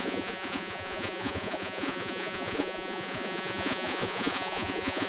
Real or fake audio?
fake